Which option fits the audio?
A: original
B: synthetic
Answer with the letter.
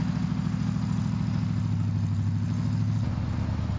A